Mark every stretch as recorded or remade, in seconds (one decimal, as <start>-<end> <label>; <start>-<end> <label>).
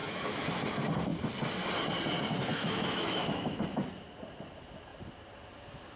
0.0-0.5 remade; 0.5-2.5 recorded; 2.5-3.8 remade; 3.8-6.0 recorded